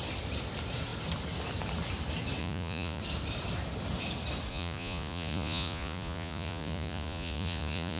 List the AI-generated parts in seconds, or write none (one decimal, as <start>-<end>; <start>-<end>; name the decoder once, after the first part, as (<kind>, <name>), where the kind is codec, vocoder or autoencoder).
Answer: 2.4-3.0 (vocoder, Vocos); 4.5-8.0